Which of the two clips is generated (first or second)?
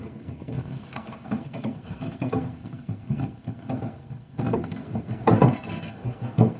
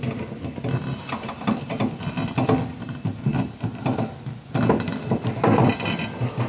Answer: first